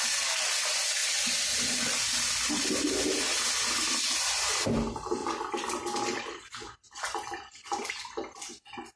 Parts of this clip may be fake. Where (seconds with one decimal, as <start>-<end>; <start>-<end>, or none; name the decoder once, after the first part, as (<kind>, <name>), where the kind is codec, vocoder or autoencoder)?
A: none

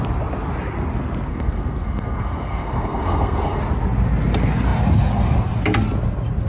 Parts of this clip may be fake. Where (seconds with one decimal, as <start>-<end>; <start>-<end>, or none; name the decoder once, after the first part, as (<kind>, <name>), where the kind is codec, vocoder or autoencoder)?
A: 1.3-3.6 (codec, SNAC)

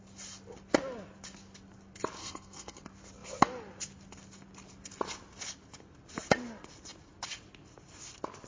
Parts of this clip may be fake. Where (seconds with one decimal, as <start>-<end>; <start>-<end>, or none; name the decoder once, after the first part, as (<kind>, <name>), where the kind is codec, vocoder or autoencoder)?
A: 2.2-2.8 (codec, SNAC)

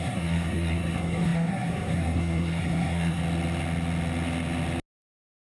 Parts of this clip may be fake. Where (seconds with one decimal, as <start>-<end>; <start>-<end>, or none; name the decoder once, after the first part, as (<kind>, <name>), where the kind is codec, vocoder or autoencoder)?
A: 0.0-3.2 (codec, SNAC); 5.0-5.5

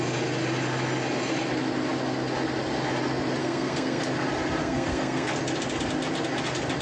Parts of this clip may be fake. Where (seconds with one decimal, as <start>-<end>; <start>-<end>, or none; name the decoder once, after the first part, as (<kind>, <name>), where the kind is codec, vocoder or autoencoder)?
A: 3.4-4.0 (codec, SNAC); 4.6-5.4

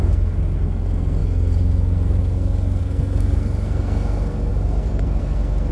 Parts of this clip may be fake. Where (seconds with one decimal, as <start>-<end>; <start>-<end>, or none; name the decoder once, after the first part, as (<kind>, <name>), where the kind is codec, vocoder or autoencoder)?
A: 0.0-5.7 (codec, SNAC)